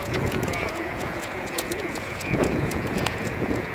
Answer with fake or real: fake